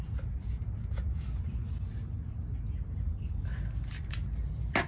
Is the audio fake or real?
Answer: real